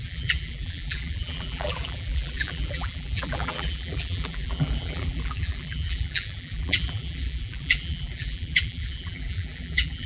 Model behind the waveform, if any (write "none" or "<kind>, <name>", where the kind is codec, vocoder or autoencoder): vocoder, BigVGAN v2